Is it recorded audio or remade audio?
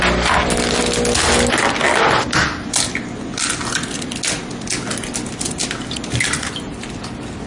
recorded